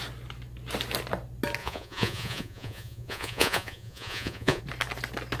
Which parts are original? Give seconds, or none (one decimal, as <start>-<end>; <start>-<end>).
0.0-1.6; 4.6-5.4